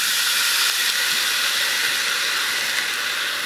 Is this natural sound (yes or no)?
yes